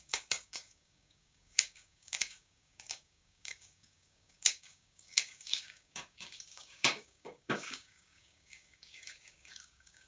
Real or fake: fake